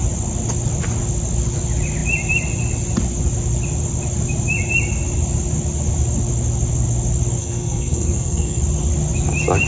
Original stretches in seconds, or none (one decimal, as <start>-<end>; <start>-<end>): 0.0-7.4; 8.6-9.7